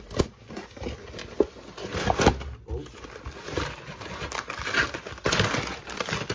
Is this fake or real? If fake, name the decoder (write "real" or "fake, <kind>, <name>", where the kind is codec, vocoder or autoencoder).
real